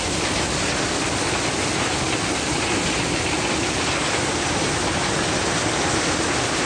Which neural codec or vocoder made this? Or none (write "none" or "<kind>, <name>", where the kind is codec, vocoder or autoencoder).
none